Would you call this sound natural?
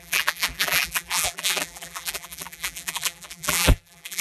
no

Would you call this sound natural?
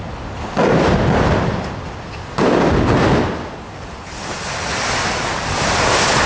yes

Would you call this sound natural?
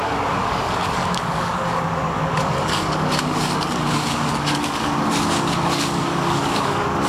no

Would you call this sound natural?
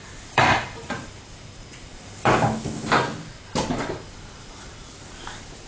no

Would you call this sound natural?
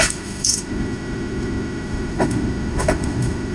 no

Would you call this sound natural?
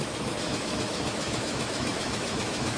no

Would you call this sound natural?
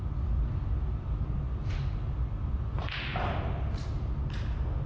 yes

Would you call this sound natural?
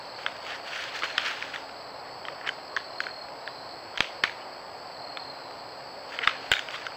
yes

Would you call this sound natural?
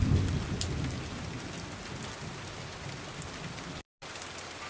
yes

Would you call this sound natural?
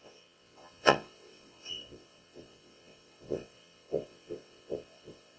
no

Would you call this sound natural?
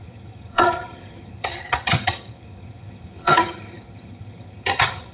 no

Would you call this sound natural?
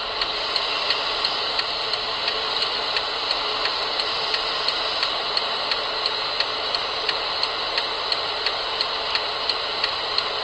yes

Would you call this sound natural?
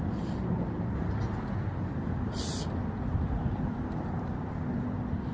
yes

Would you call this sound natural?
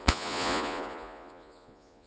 no